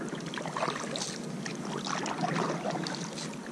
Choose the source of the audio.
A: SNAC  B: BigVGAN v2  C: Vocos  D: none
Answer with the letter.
D